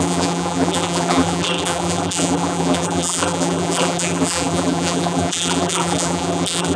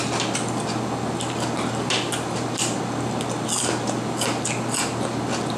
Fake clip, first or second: first